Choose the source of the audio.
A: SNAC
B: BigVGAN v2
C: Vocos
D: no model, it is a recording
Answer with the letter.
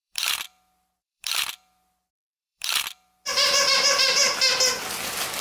B